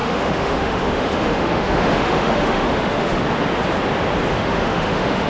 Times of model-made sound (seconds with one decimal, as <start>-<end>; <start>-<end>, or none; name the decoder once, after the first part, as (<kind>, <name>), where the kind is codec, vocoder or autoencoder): 0.0-3.2 (autoencoder, DAC-VAE); 4.3-5.3